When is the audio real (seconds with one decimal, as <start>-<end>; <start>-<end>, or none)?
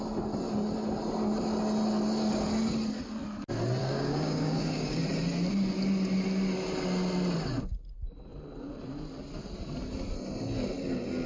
0.0-3.8; 5.0-11.3